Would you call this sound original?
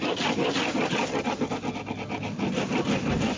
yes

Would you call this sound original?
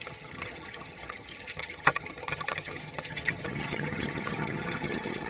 no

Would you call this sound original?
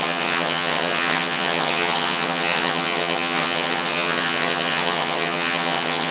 no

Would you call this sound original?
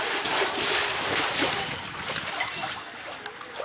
yes